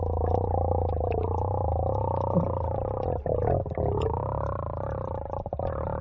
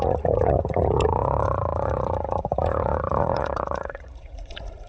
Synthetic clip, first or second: second